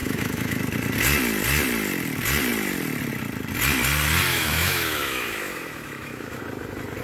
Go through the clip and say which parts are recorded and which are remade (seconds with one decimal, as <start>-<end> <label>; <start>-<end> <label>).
0.0-0.6 remade; 0.6-4.3 recorded; 4.3-6.4 remade; 6.4-7.0 recorded